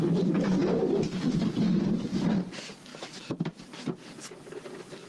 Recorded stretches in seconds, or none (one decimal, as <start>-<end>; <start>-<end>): 0.0-5.1

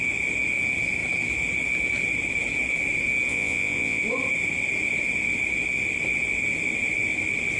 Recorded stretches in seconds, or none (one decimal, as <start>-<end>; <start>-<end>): 0.0-3.3; 4.0-7.6

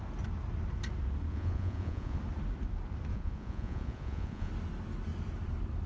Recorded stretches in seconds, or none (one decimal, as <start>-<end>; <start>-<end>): 0.0-1.3; 2.2-3.1; 4.5-5.9

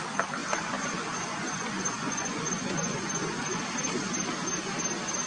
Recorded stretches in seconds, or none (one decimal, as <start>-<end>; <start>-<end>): 0.0-0.4; 3.6-5.3

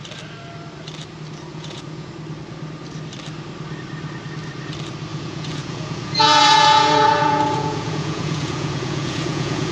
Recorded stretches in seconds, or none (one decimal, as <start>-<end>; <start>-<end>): 0.0-1.5; 2.1-5.1

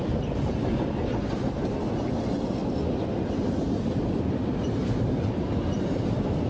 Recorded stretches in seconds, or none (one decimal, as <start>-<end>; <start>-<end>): 0.0-6.5